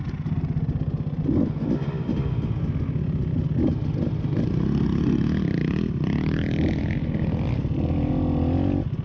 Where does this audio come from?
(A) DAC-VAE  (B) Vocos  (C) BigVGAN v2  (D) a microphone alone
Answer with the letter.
D